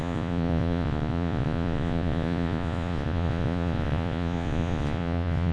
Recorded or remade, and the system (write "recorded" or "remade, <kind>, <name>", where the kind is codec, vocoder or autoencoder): remade, vocoder, Vocos